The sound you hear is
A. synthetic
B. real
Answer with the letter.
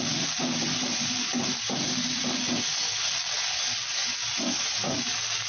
B